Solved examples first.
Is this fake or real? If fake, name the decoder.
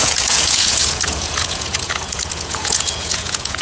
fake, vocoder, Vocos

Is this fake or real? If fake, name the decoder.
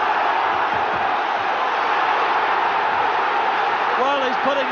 real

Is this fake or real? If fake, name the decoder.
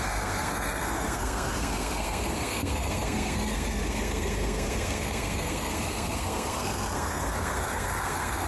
fake, codec, SNAC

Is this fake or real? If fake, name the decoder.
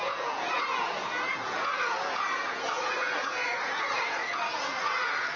fake, vocoder, Vocos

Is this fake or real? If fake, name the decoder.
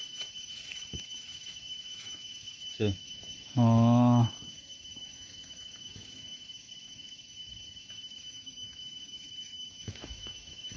fake, autoencoder, DAC-VAE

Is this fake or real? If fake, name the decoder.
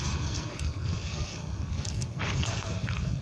fake, codec, SNAC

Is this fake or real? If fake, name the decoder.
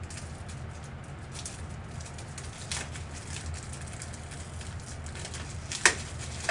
real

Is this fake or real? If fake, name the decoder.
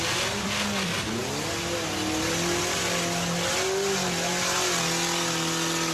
real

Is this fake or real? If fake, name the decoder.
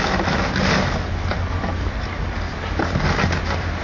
real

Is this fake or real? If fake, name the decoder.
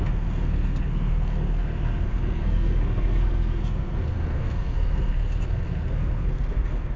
fake, codec, SNAC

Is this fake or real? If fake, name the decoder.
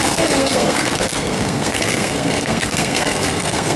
fake, codec, SNAC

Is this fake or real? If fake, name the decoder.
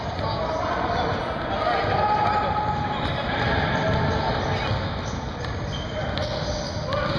real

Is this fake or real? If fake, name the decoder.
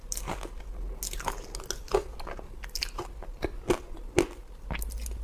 real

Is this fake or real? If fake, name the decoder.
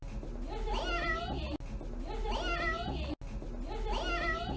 real